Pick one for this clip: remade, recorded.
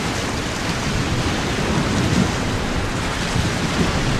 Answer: recorded